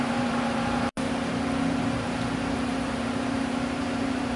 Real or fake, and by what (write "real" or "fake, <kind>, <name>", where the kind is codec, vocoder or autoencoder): fake, vocoder, BigVGAN v2